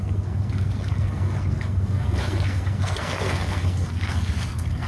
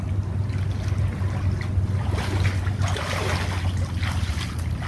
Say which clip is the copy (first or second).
first